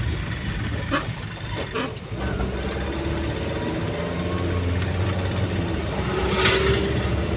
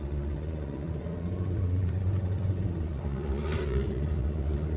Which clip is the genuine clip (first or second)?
first